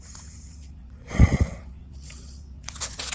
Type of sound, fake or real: fake